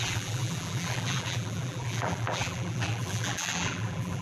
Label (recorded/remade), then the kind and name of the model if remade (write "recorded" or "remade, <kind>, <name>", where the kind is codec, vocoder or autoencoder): remade, vocoder, BigVGAN v2